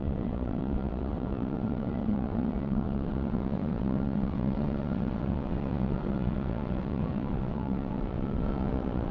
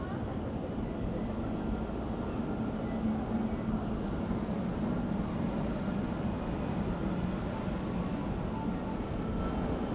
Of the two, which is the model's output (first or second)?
first